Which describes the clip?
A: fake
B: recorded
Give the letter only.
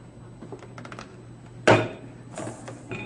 B